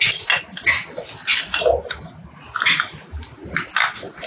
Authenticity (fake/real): real